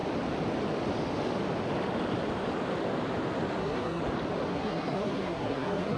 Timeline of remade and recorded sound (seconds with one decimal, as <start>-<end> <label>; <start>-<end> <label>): 0.0-3.6 recorded; 3.6-4.0 remade; 4.0-4.5 recorded; 4.5-6.0 remade